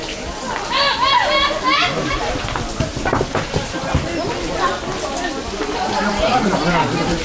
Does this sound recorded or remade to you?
recorded